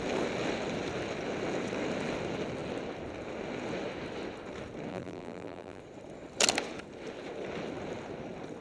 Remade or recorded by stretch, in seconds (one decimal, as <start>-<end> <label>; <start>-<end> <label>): 0.0-4.9 recorded; 4.9-5.8 remade; 5.8-8.6 recorded